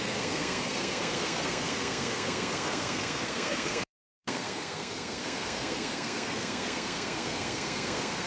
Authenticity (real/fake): fake